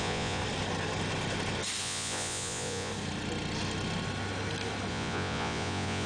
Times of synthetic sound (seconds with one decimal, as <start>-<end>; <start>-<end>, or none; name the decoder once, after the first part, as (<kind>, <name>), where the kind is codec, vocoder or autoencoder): 0.0-0.4 (vocoder, Vocos); 1.8-2.9; 4.9-6.1